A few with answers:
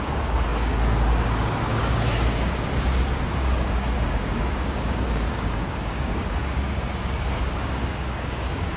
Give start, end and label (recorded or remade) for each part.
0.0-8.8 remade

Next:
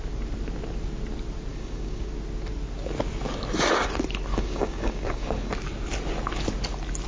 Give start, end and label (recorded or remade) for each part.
0.0-1.5 recorded; 1.5-2.1 remade; 2.1-4.3 recorded; 4.3-5.5 remade; 5.5-7.1 recorded